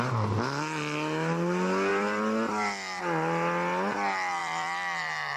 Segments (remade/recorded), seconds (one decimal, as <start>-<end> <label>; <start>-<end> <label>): 0.0-1.9 recorded; 1.9-3.0 remade; 3.0-4.4 recorded; 4.4-5.4 remade